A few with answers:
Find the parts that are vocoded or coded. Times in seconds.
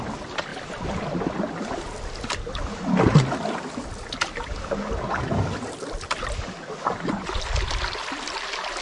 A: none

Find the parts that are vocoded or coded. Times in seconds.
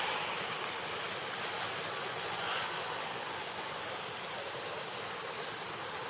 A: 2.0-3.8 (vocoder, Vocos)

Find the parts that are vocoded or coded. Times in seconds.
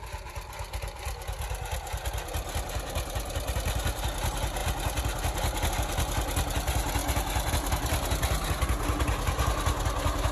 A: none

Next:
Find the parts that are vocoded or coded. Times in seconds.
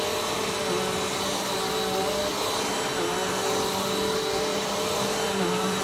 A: 4.5-5.8 (vocoder, BigVGAN v2)